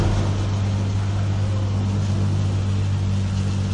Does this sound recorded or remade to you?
recorded